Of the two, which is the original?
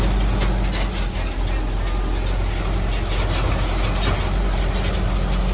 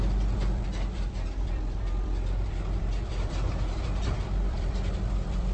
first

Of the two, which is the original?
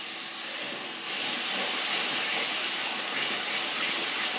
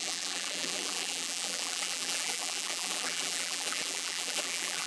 first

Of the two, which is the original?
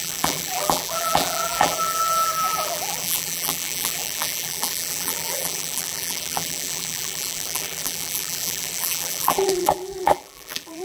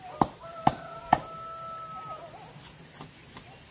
second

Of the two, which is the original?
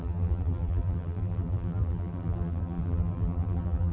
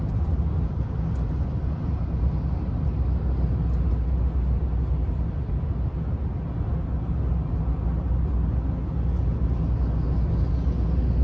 second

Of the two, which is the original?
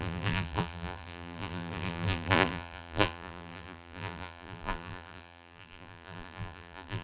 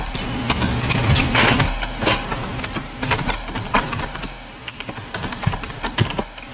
second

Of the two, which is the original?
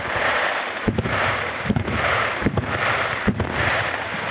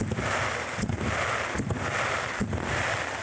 second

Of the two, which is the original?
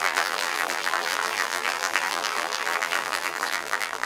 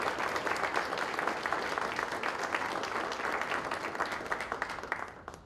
second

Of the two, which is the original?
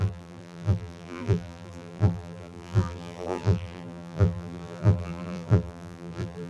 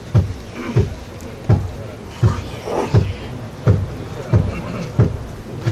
second